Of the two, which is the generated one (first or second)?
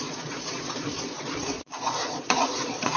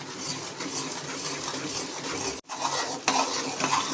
first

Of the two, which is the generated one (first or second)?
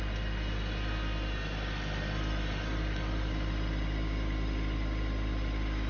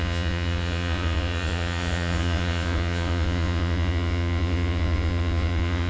second